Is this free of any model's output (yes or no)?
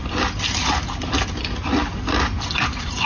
yes